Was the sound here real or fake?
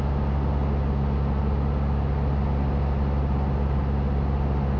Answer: real